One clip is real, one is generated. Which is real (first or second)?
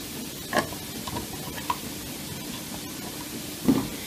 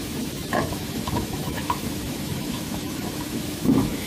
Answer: first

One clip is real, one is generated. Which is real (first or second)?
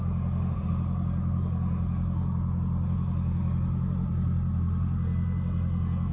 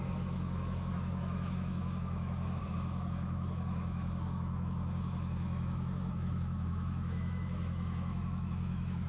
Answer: first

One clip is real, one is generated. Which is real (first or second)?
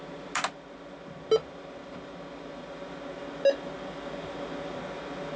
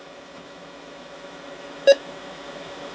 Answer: first